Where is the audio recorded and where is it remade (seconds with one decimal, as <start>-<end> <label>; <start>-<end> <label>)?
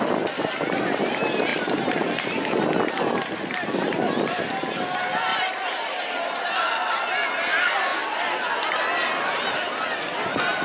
0.0-1.5 recorded; 1.5-2.1 remade; 2.1-5.3 recorded; 5.3-6.0 remade; 6.0-10.6 recorded